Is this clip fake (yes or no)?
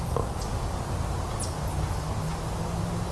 no